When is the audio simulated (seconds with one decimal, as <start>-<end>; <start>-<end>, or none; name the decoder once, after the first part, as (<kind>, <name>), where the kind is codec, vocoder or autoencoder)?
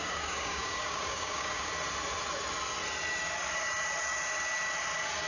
0.0-1.7 (codec, DAC)